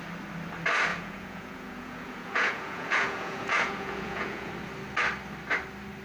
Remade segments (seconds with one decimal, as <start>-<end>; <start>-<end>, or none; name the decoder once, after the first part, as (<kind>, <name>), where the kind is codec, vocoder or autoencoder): 0.9-4.5 (vocoder, Vocos)